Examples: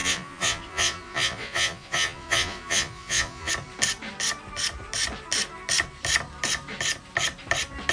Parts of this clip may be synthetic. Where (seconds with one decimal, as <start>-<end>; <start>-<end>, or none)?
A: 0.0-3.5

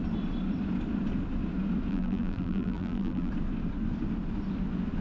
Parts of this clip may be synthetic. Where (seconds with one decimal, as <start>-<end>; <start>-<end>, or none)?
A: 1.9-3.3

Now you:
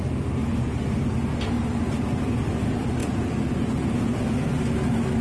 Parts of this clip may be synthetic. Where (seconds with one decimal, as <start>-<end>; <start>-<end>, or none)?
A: none

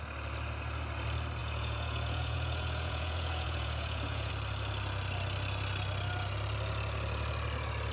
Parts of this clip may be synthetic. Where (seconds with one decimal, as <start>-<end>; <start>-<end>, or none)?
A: 1.4-4.3